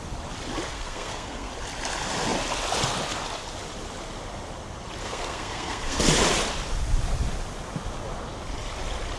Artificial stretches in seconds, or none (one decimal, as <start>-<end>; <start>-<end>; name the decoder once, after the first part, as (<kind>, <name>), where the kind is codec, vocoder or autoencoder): 0.7-1.5 (codec, SNAC); 5.0-6.0